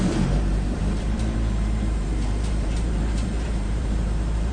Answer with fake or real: fake